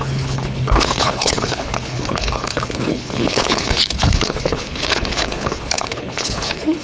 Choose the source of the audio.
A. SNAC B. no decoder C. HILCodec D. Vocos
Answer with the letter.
C